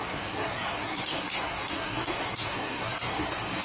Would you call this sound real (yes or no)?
no